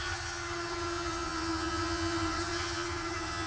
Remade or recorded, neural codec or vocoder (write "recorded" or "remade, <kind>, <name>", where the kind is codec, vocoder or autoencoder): remade, vocoder, HiFi-GAN